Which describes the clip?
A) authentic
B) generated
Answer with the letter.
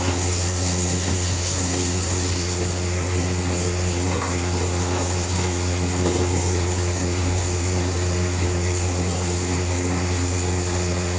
B